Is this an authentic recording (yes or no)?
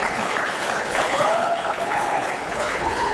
no